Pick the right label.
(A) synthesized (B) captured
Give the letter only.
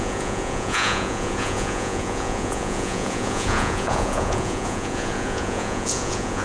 A